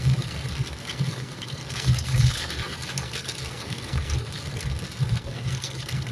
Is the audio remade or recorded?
remade